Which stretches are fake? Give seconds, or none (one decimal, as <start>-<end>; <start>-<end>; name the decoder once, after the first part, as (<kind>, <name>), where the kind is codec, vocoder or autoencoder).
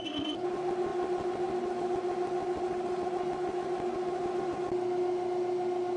none